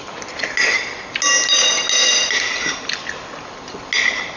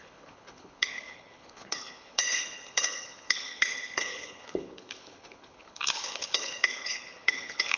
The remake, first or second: second